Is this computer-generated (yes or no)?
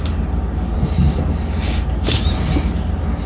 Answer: no